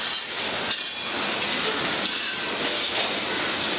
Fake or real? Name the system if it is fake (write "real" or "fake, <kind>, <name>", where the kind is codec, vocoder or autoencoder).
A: real